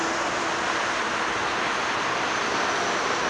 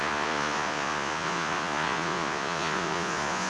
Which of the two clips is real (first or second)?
first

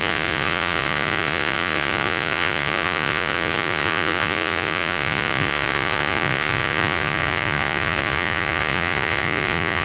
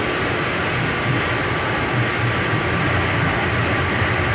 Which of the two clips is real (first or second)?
second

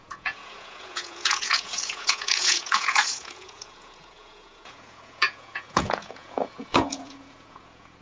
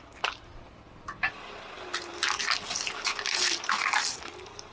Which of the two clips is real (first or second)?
second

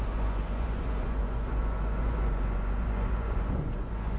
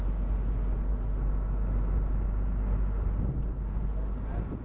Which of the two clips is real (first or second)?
second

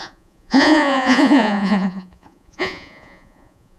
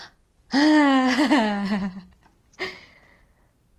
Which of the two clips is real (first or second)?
second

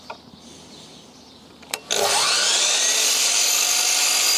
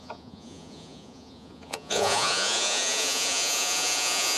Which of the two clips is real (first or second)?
first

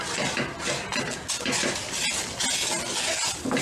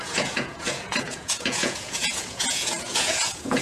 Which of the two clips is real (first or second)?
first